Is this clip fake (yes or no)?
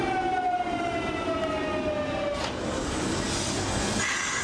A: no